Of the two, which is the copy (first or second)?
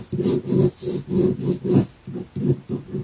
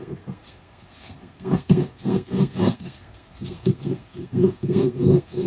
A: second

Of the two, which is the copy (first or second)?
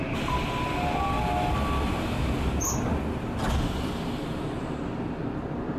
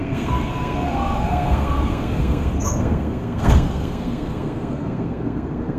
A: second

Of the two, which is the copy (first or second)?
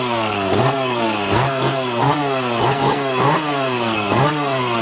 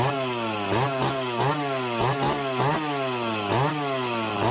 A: first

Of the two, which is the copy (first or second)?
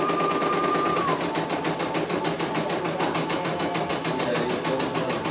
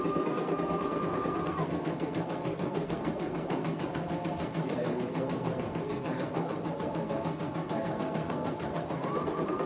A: second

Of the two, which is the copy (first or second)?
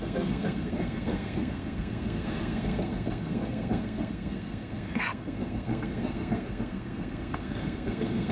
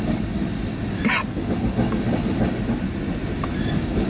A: first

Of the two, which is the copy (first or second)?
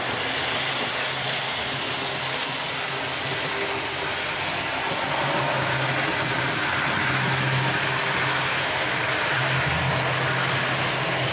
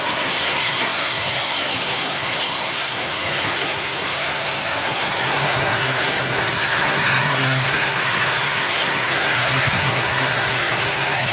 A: second